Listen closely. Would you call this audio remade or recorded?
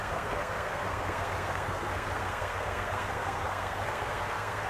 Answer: remade